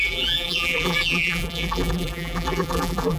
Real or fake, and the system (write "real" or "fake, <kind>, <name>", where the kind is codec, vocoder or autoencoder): fake, vocoder, BigVGAN v2